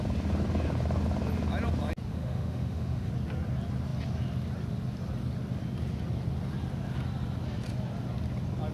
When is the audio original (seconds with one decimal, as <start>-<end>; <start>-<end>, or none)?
0.0-2.1; 3.1-8.7